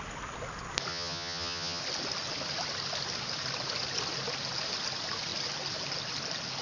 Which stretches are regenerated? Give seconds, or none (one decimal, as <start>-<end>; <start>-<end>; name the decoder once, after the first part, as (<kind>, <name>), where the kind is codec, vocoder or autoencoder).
0.9-1.8 (vocoder, HiFi-GAN)

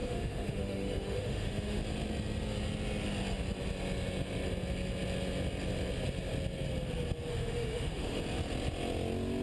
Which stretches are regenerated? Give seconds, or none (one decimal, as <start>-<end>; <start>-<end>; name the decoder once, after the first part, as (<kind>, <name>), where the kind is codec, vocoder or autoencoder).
0.0-1.8 (autoencoder, DAC-VAE); 7.3-8.2